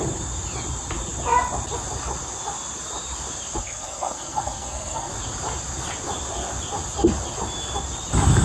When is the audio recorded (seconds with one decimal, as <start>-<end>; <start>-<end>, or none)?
0.0-3.6; 5.1-8.4